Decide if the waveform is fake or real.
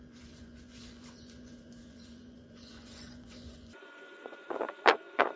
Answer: fake